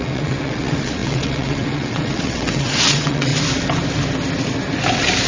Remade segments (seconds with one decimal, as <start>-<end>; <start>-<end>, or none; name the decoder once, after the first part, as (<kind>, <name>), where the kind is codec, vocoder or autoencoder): 0.0-3.3 (vocoder, WaveNeXt)